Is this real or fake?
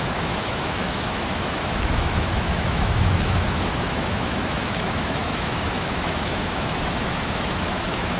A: fake